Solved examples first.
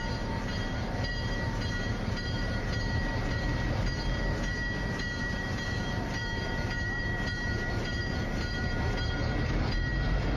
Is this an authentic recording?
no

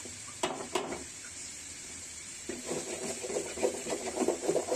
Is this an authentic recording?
no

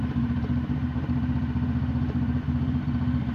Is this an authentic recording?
no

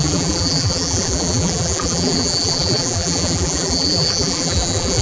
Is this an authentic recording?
no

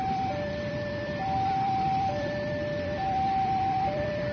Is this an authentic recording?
no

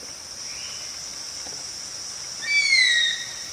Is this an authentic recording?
yes